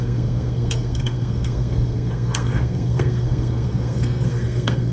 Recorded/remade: remade